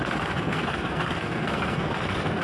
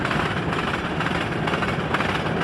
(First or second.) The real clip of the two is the second